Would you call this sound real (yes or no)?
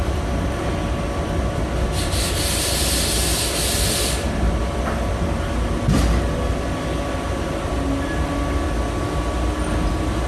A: yes